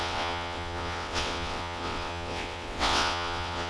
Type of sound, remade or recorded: remade